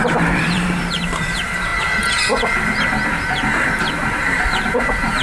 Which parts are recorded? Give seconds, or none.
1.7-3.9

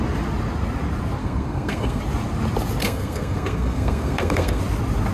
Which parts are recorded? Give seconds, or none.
0.0-1.2; 2.0-2.8; 4.6-5.1

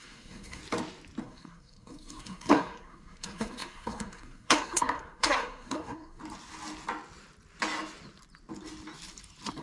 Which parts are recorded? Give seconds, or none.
0.6-1.2; 6.2-9.6

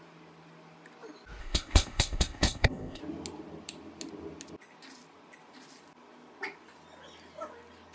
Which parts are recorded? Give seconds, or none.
0.0-1.4; 3.0-7.9

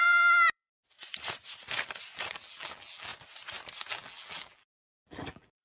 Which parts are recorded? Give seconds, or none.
0.7-2.4; 3.1-3.8